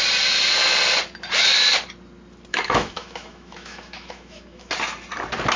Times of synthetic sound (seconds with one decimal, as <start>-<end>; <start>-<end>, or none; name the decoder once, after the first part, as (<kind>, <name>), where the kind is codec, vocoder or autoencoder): 2.5-4.7 (autoencoder, DAC-VAE)